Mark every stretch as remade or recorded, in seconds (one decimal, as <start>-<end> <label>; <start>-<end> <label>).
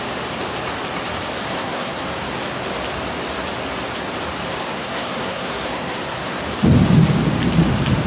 0.0-1.5 recorded; 1.5-2.1 remade; 2.1-4.6 recorded; 4.6-6.4 remade; 6.4-8.1 recorded